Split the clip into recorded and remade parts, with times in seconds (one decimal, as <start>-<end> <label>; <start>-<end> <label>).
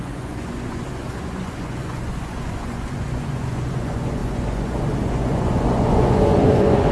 0.0-6.9 remade